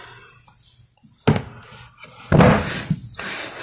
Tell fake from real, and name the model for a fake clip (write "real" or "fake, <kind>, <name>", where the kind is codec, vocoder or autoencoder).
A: real